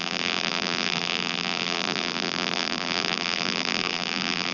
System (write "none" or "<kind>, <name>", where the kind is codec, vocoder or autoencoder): vocoder, BigVGAN v2